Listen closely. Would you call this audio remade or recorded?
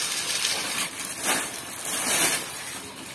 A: remade